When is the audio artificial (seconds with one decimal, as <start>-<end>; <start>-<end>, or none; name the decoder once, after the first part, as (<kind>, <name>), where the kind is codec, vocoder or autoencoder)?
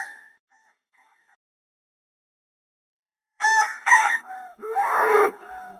0.0-5.8 (codec, DAC)